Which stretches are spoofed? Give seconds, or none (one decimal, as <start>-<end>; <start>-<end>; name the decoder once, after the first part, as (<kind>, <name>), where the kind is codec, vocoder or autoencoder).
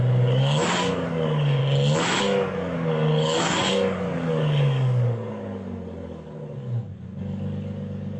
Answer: 0.0-1.6 (codec, DAC); 2.2-8.2